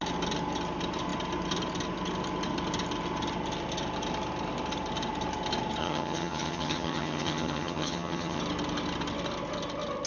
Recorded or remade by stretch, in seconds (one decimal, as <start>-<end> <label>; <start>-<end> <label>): 0.0-5.8 recorded; 5.8-8.4 remade; 8.4-10.1 recorded